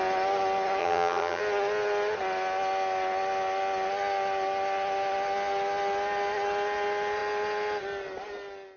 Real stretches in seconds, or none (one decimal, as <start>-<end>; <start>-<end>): 0.0-0.8; 1.4-8.8